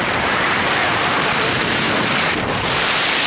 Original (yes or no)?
no